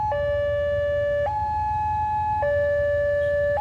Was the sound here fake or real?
real